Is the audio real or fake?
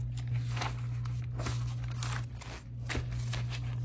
real